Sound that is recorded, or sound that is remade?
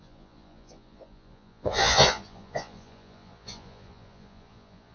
remade